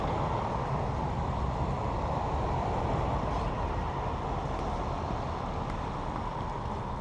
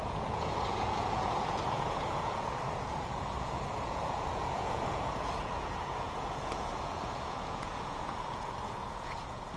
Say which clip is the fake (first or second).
second